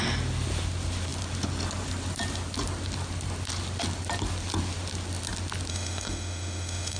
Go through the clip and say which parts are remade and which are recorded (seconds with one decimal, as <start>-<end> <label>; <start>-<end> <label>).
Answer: 0.0-5.7 recorded; 5.7-7.0 remade